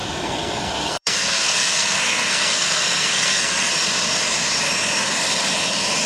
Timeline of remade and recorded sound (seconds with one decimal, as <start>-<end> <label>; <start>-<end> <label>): 0.0-3.7 remade; 3.7-6.1 recorded